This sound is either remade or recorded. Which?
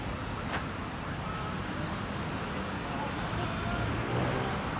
recorded